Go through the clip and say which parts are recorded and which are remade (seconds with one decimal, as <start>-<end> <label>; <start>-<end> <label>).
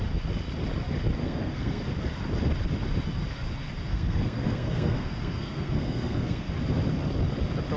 0.0-1.2 recorded; 1.2-1.8 remade; 1.8-3.9 recorded; 3.9-6.5 remade; 6.5-7.8 recorded